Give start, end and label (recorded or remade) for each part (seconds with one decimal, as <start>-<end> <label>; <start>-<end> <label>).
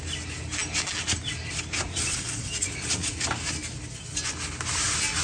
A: 0.0-1.9 recorded; 1.9-3.2 remade; 3.2-5.2 recorded